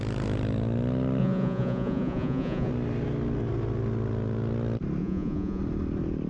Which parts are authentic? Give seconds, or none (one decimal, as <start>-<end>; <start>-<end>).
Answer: 0.0-1.2; 2.7-5.0; 5.6-6.3